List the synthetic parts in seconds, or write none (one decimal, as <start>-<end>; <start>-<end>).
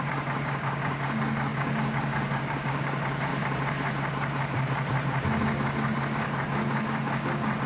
0.0-3.3; 5.4-7.7